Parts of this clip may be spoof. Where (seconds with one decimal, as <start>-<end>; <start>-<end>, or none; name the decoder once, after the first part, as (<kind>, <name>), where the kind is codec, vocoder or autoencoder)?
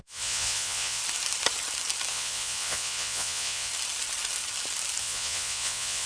0.0-1.0 (vocoder, Vocos); 2.1-3.7; 5.0-6.1